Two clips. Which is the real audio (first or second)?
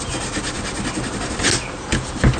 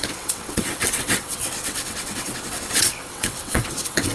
first